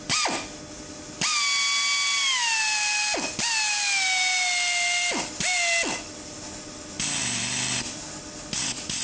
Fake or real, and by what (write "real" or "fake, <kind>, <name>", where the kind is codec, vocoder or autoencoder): real